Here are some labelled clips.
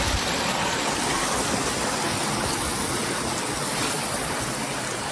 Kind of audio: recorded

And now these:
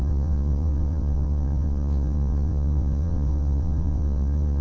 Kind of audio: remade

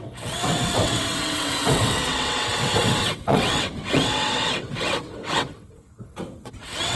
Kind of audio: remade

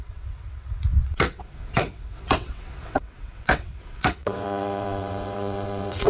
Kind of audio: remade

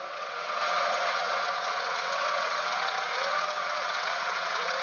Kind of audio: remade